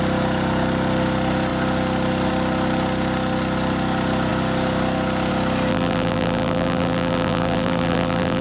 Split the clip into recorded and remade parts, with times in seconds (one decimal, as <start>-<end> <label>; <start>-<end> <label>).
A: 0.0-5.7 recorded; 5.7-8.4 remade

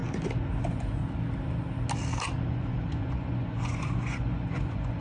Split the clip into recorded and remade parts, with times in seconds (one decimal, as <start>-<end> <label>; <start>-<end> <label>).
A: 0.0-0.6 recorded; 0.6-1.0 remade; 1.0-2.5 recorded; 2.5-5.0 remade